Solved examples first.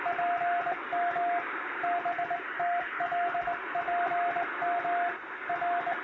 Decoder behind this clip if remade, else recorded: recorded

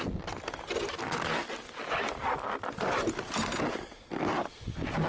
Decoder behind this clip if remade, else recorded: recorded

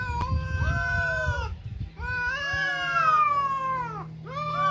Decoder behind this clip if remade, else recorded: recorded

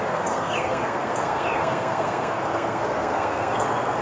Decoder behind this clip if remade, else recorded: remade, codec, SNAC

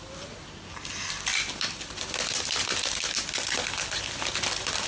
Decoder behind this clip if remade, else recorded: recorded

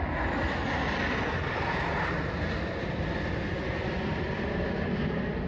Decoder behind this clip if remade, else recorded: recorded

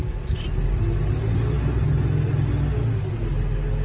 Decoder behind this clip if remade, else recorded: recorded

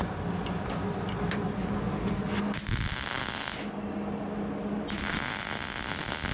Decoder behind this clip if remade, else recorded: recorded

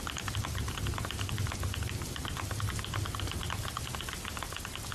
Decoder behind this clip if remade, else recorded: recorded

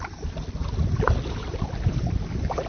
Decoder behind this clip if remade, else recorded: recorded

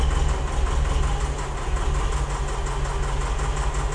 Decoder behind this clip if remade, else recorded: recorded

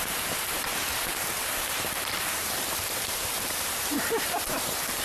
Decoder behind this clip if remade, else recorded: remade, vocoder, BigVGAN v2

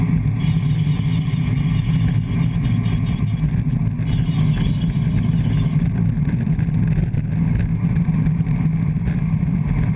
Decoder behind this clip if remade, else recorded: recorded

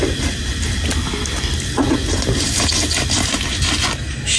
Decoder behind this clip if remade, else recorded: recorded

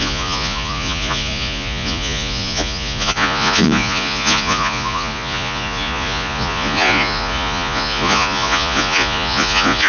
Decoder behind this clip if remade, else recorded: remade, vocoder, Vocos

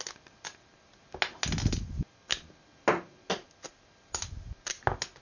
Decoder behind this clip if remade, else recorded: recorded